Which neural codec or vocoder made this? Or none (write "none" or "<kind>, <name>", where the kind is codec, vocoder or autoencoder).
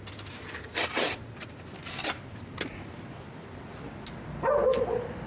none